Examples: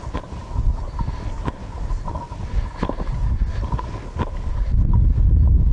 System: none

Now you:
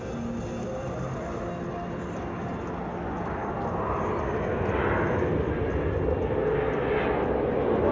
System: none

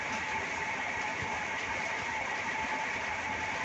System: none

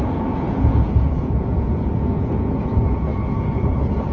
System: vocoder, Vocos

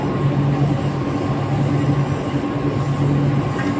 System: none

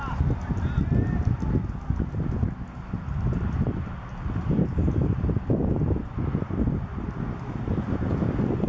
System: none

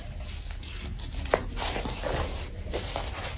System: none